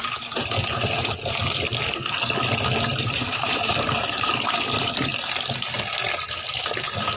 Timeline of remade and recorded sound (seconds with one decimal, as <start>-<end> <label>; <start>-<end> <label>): 0.0-1.4 remade; 1.4-2.9 recorded; 2.9-5.1 remade; 5.1-6.7 recorded; 6.7-7.2 remade